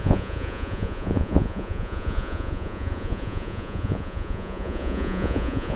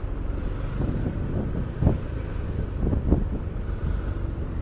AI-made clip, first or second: first